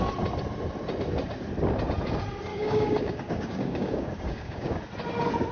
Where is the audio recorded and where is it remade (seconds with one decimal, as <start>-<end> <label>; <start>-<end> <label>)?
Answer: 0.0-2.5 recorded; 2.5-4.8 remade; 4.8-5.5 recorded

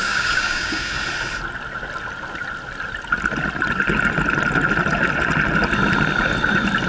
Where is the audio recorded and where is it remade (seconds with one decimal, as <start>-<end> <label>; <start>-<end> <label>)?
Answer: 0.0-0.9 remade; 0.9-6.9 recorded

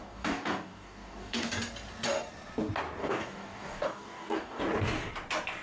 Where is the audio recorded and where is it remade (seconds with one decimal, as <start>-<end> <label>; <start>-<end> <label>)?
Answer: 0.0-1.5 remade; 1.5-3.0 recorded; 3.0-4.6 remade; 4.6-5.6 recorded

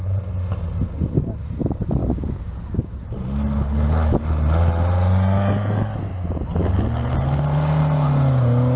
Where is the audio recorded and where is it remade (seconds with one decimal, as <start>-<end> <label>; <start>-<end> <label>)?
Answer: 0.0-2.0 recorded; 2.0-3.0 remade; 3.0-8.8 recorded

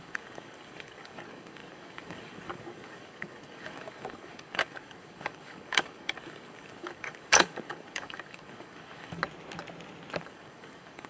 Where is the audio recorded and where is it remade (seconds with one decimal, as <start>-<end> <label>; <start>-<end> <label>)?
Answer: 0.0-9.2 remade; 9.2-10.2 recorded; 10.2-11.1 remade

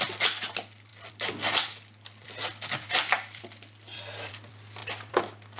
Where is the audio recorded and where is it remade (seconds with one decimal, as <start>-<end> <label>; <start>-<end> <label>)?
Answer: 0.0-5.6 recorded

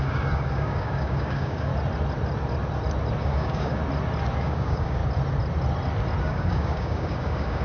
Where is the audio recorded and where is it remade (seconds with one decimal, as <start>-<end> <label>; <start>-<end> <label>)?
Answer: 0.0-1.7 remade; 1.7-3.2 recorded; 3.2-3.8 remade; 3.8-4.4 recorded; 4.4-5.0 remade; 5.0-6.2 recorded; 6.2-7.6 remade